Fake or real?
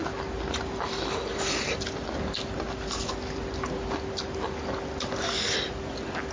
real